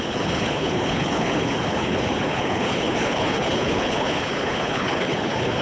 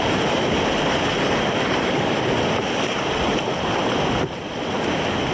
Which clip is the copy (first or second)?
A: first